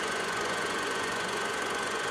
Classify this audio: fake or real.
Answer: fake